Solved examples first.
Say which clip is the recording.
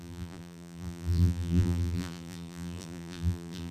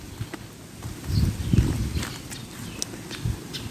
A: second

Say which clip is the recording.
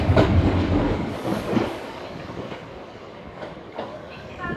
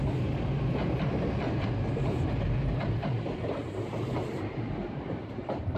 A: second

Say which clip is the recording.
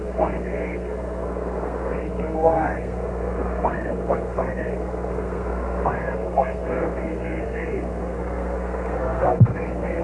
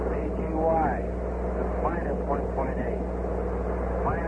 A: second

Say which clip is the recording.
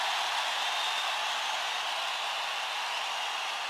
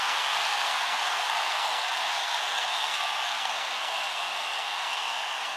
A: first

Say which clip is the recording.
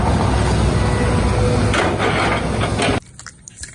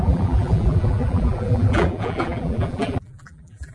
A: first